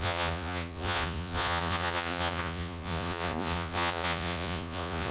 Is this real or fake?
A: fake